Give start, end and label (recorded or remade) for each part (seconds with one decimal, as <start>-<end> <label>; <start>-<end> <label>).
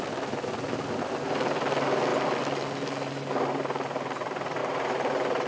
0.0-5.5 recorded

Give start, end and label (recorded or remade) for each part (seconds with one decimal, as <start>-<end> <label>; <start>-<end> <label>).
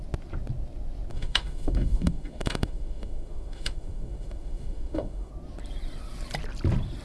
0.0-1.1 recorded; 1.1-5.3 remade; 5.3-7.0 recorded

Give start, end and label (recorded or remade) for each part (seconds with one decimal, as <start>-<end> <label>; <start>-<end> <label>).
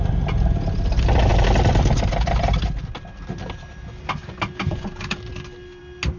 0.0-6.2 recorded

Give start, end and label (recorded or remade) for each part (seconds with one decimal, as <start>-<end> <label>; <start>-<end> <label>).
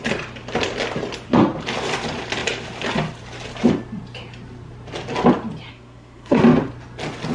0.0-5.7 recorded; 5.7-6.4 remade; 6.4-7.3 recorded